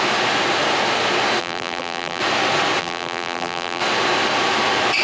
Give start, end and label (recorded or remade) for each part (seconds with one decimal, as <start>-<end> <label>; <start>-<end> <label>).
0.0-1.4 recorded; 1.4-2.2 remade; 2.2-2.8 recorded; 2.8-3.8 remade; 3.8-5.0 recorded